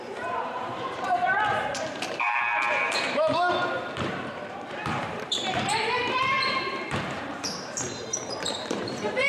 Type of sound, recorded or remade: remade